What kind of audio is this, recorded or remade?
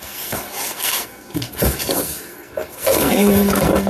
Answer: remade